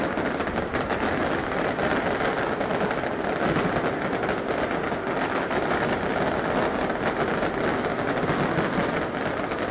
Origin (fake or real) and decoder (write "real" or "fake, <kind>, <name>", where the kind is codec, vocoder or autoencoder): real